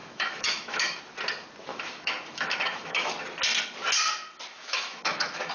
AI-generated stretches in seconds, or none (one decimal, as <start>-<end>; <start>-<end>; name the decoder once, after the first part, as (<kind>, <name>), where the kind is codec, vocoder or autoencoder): 0.0-1.0 (autoencoder, DAC-VAE); 1.7-3.1; 4.5-5.5